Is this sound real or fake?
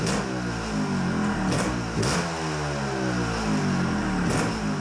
real